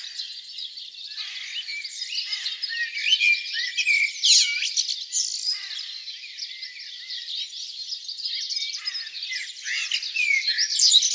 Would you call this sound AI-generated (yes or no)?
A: no